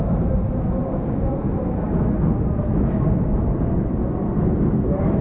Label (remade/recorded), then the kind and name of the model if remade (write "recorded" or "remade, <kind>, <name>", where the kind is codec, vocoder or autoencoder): recorded